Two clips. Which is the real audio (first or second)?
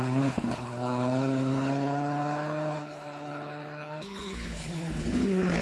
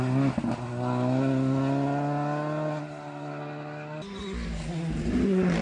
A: second